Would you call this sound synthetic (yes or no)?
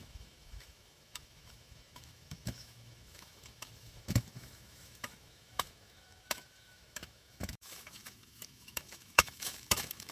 yes